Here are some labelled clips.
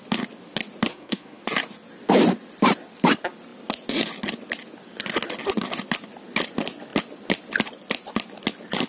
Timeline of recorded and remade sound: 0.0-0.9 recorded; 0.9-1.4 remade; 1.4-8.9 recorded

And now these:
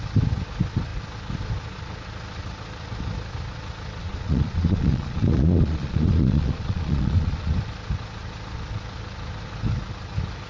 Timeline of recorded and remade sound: 0.0-4.0 recorded; 4.0-7.5 remade; 7.5-10.5 recorded

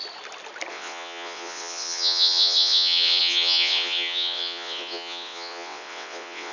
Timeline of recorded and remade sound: 0.0-0.7 recorded; 0.7-6.5 remade

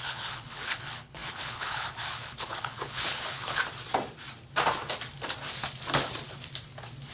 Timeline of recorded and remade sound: 0.0-3.6 remade; 3.6-7.1 recorded

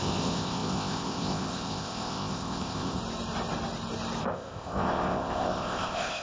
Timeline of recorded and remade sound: 0.0-3.0 remade; 3.0-4.2 recorded; 4.2-6.2 remade

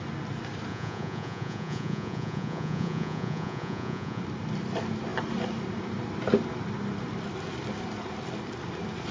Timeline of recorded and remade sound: 0.0-0.7 recorded; 0.7-4.2 remade; 4.2-9.1 recorded

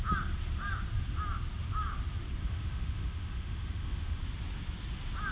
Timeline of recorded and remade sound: 0.0-2.4 recorded; 2.4-4.2 remade; 4.2-5.3 recorded

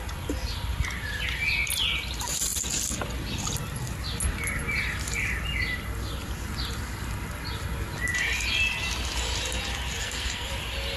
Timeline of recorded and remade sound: 0.0-10.0 recorded; 10.0-10.5 remade; 10.5-11.0 recorded